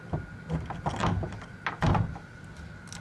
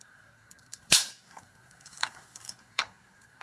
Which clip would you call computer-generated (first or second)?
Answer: second